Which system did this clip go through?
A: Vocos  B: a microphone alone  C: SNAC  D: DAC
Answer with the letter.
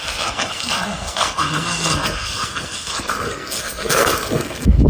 C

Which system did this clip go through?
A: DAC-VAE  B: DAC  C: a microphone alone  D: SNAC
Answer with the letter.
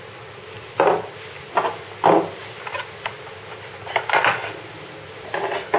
C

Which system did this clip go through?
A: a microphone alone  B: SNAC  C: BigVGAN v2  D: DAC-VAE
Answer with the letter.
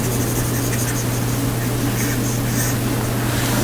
A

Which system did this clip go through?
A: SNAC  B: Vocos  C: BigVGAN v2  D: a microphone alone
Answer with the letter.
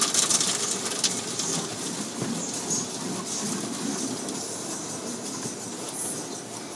D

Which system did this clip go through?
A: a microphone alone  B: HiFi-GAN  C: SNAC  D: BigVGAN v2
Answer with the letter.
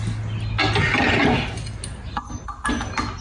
A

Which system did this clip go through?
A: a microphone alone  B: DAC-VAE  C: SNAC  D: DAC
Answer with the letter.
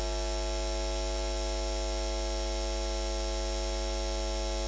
A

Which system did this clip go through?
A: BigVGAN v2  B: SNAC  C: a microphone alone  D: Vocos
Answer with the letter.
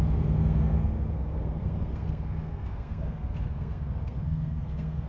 B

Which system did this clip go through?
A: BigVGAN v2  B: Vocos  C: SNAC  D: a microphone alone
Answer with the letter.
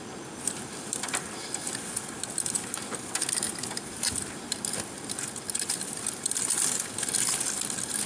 D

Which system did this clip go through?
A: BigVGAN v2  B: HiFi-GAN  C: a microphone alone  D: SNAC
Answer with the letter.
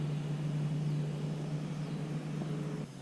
C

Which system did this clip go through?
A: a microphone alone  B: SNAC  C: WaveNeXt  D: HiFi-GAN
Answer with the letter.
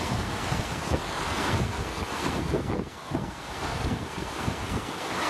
B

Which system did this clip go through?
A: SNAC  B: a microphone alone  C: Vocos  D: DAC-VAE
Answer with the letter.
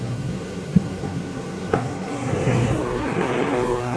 A